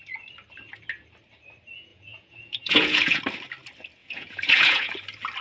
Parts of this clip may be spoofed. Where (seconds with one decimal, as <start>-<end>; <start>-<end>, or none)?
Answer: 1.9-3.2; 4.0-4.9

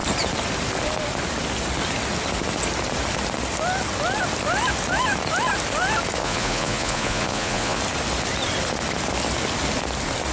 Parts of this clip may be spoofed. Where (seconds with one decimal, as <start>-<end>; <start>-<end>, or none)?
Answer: 6.2-7.8

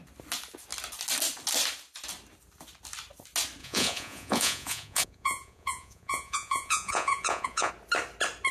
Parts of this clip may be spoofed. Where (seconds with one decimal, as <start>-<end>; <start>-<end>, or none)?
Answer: 3.6-7.7

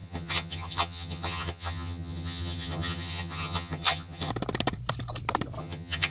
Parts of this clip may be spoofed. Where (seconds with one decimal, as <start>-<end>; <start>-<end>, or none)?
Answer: 0.0-4.3; 5.6-6.1

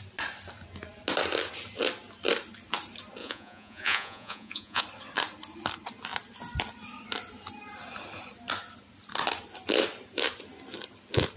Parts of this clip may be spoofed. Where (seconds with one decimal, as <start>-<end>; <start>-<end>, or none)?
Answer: 3.2-4.8

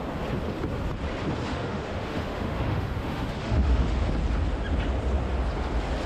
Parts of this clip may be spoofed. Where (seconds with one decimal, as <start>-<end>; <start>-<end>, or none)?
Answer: 1.5-4.0